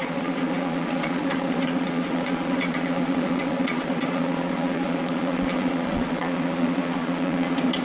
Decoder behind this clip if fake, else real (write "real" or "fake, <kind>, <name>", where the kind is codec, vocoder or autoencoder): fake, vocoder, Vocos